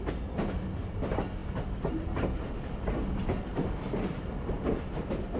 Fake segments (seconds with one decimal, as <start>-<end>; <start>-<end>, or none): none